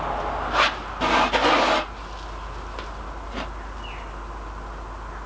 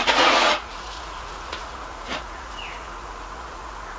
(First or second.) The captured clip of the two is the first